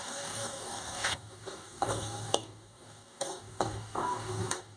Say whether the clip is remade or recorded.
remade